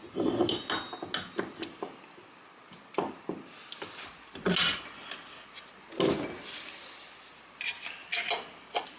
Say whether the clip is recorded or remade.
recorded